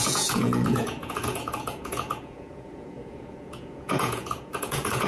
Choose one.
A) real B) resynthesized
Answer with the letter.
B